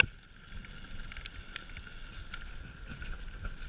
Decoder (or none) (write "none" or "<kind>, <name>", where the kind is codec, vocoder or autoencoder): none